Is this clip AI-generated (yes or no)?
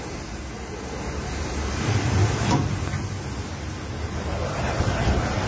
no